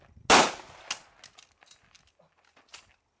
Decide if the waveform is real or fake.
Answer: real